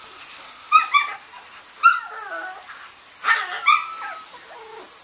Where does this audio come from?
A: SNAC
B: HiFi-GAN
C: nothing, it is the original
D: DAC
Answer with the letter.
C